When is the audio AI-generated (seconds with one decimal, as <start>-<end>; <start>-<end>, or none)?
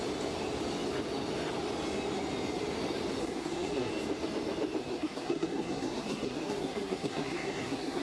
3.2-3.9; 4.8-8.0